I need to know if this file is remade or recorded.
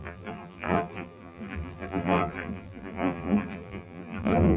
remade